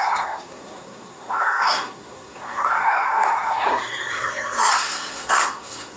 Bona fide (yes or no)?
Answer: no